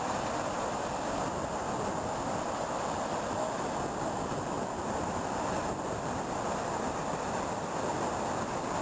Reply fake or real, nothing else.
real